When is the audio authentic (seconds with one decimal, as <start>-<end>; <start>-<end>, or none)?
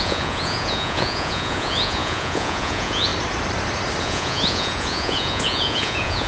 3.1-4.0